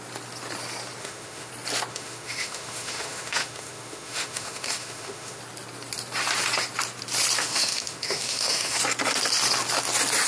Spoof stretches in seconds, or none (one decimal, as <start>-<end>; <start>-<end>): 1.0-1.5; 1.9-5.4; 7.4-8.8